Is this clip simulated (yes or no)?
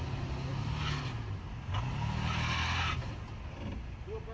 no